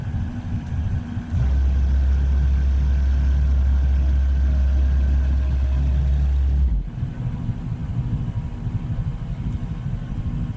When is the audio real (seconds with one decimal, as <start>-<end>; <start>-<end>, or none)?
0.0-10.6